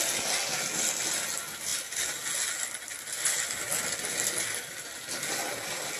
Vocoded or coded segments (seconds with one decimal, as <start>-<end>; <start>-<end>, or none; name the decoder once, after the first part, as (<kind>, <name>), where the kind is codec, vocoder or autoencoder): none